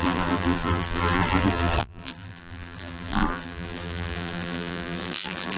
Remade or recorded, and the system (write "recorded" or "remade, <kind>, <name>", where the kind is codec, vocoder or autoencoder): remade, vocoder, BigVGAN v2